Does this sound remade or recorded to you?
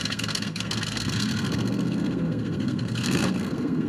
remade